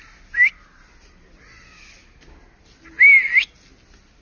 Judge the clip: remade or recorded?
recorded